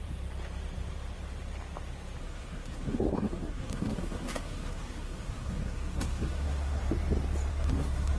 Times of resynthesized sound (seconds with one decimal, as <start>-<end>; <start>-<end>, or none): 2.2-6.8; 7.5-8.2